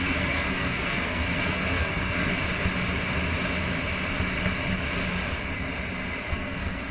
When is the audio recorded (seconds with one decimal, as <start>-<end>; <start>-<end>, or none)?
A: 2.3-6.3